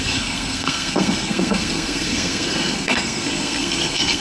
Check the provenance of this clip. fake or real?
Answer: fake